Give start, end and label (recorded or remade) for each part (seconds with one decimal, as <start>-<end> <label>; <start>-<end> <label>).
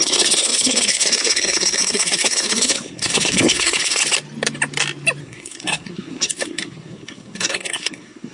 0.0-4.0 remade; 4.0-5.2 recorded; 5.2-8.3 remade